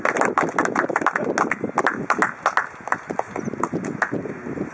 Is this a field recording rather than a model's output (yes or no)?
yes